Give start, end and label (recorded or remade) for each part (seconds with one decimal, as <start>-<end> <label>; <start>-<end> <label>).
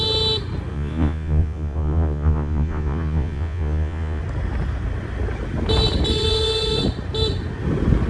0.0-0.7 recorded; 0.7-4.2 remade; 4.2-8.1 recorded